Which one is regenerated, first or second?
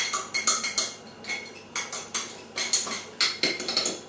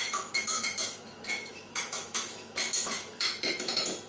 second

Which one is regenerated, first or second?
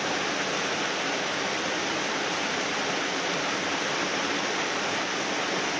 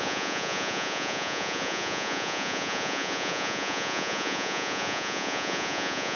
second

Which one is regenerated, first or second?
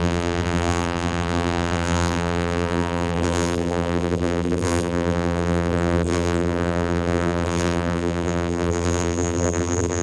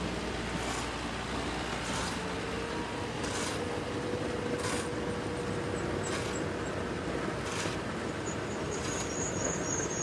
first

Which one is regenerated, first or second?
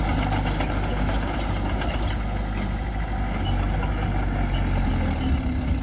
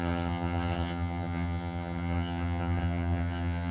second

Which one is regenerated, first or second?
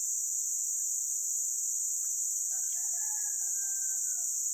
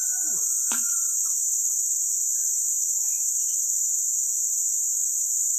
second